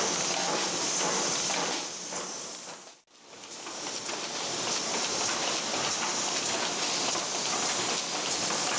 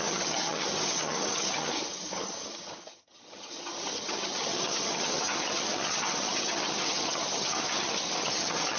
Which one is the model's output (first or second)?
second